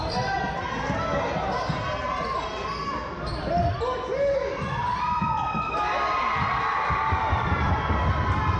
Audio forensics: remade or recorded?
recorded